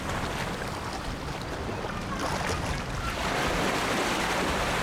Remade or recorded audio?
recorded